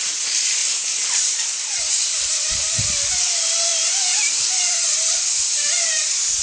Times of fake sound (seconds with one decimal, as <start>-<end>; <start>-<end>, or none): 0.0-0.6; 1.2-6.4